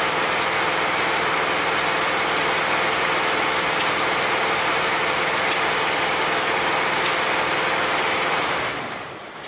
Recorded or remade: remade